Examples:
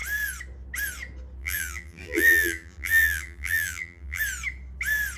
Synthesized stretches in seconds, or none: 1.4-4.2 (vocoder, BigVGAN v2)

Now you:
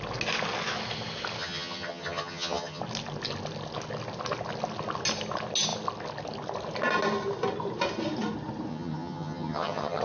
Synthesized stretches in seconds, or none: 1.4-2.8 (vocoder, HiFi-GAN); 8.7-10.0

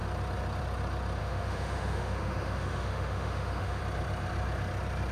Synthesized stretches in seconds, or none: 1.2-3.8 (autoencoder, DAC-VAE)

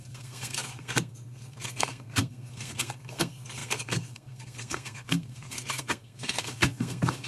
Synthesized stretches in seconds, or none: 0.0-7.3 (codec, SNAC)

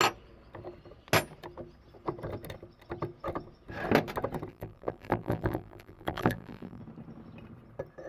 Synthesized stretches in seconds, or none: 4.5-6.8 (vocoder, BigVGAN v2)

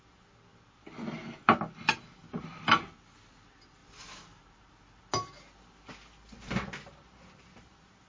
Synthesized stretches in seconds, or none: none

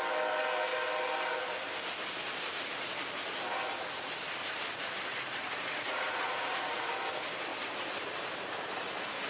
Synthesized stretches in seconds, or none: 5.1-6.9 (vocoder, Vocos)